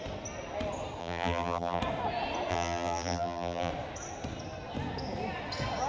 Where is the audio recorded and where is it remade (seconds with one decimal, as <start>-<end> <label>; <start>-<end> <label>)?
0.0-1.0 recorded; 1.0-1.8 remade; 1.8-2.5 recorded; 2.5-3.7 remade; 3.7-5.9 recorded